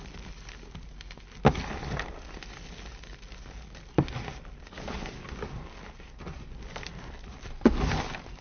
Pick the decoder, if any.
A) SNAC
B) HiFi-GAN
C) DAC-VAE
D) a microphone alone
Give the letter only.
D